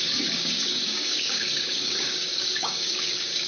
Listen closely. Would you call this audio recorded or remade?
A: remade